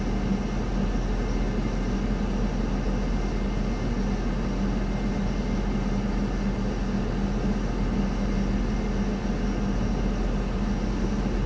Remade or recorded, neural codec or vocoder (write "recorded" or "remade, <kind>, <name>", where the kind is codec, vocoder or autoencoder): recorded